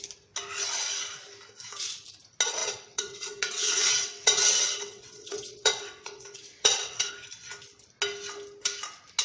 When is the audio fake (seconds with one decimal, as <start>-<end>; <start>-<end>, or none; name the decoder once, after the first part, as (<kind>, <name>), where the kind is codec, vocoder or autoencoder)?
2.6-7.1 (vocoder, WaveNeXt)

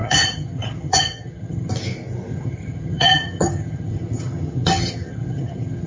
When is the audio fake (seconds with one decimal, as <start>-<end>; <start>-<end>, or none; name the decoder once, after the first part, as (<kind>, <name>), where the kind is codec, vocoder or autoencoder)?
0.0-1.7 (vocoder, HiFi-GAN); 2.3-5.9